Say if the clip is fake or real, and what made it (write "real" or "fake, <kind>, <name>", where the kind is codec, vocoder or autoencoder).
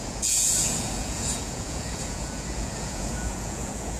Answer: fake, vocoder, Vocos